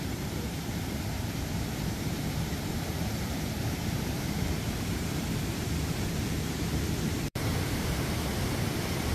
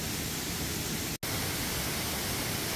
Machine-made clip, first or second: first